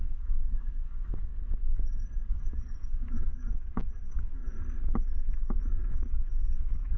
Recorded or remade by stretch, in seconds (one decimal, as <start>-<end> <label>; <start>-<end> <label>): 0.0-1.3 remade; 1.3-2.3 recorded; 2.3-4.4 remade; 4.4-5.9 recorded; 5.9-7.0 remade